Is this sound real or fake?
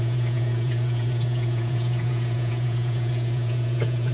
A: fake